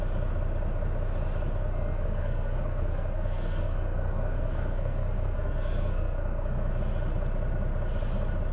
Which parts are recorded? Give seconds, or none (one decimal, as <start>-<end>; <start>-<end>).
0.0-1.6; 6.7-8.5